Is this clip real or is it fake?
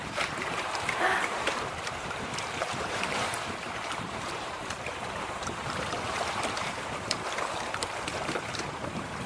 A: fake